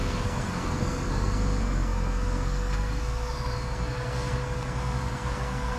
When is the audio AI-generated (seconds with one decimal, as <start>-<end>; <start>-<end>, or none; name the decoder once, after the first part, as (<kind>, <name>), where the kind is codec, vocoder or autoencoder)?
0.0-5.8 (codec, SNAC)